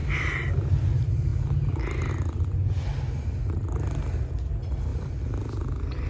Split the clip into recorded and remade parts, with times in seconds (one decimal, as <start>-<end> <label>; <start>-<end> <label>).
0.0-6.1 recorded